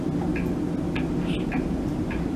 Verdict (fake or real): real